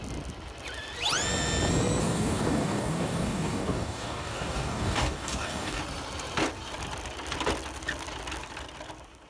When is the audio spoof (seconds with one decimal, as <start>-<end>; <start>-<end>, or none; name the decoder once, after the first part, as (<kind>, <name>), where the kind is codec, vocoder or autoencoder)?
2.0-5.8 (codec, DAC)